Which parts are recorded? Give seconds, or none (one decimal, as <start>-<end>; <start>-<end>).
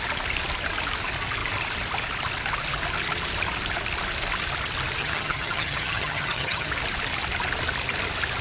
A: 0.0-5.0; 6.7-8.4